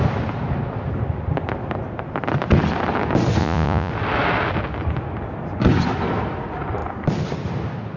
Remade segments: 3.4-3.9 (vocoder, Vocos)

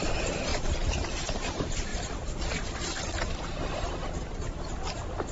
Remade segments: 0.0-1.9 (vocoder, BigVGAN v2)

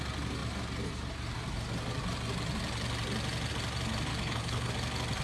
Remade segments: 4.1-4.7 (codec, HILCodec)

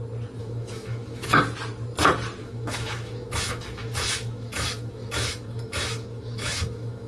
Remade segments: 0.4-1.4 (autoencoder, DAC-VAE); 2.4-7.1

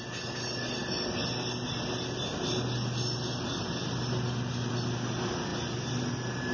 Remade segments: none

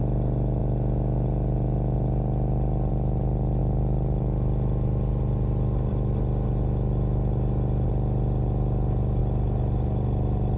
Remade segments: none

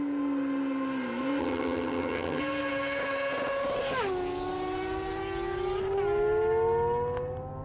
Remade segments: 1.4-2.4 (vocoder, HiFi-GAN)